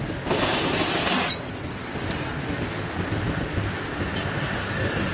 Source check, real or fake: real